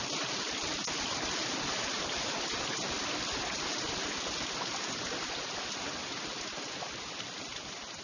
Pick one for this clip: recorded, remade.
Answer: recorded